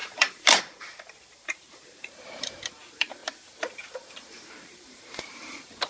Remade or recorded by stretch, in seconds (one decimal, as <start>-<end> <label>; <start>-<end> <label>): 0.0-3.2 remade; 3.2-3.8 recorded; 3.8-5.9 remade